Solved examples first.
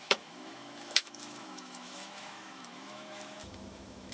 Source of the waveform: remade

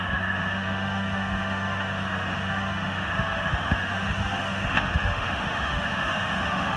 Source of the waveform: remade